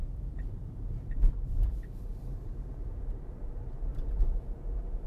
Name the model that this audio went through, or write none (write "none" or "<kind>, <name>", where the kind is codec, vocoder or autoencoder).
vocoder, BigVGAN v2